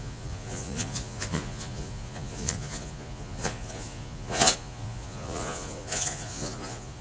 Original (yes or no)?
no